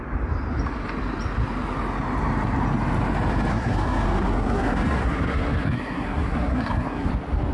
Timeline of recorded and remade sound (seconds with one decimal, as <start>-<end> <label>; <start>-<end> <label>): 0.0-3.5 recorded; 3.5-7.1 remade; 7.1-7.5 recorded